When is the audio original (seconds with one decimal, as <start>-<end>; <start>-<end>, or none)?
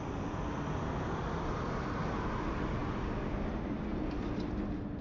0.0-5.0